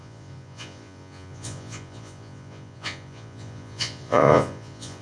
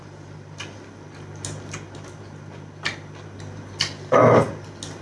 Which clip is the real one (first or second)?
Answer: second